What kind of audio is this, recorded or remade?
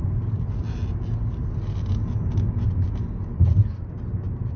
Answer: recorded